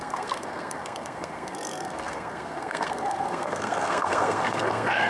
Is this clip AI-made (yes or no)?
yes